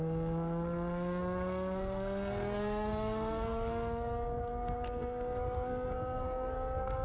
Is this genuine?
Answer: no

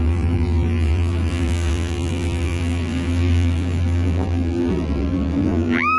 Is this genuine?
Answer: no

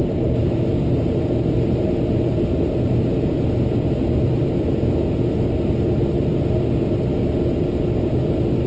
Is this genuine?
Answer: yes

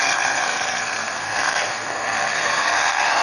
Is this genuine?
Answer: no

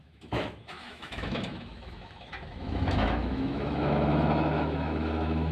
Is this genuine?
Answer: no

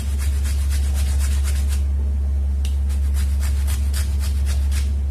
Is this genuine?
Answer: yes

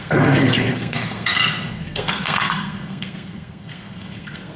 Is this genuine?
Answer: no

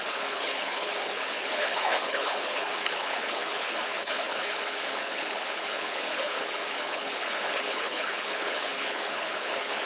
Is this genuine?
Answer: no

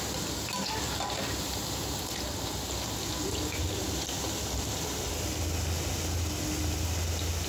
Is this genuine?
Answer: yes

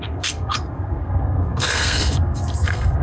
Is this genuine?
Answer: no